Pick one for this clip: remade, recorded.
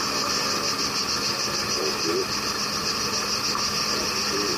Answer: recorded